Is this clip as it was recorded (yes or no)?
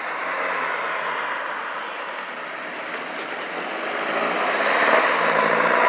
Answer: yes